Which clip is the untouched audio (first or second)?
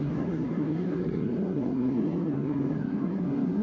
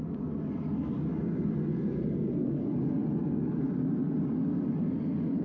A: second